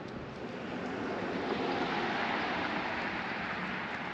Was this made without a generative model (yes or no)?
yes